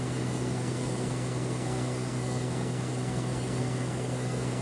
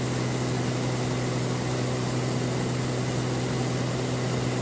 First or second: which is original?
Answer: second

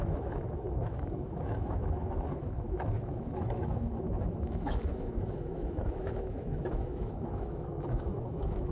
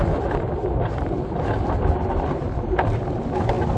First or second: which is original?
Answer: second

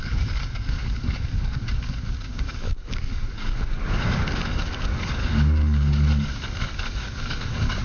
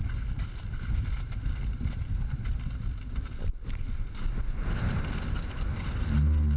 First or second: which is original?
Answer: second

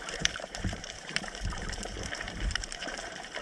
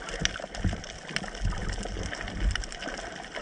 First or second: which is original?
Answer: second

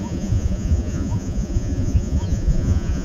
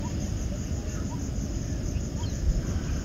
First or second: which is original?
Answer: second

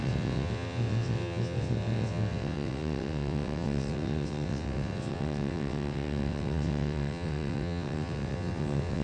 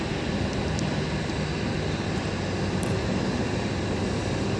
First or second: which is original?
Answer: second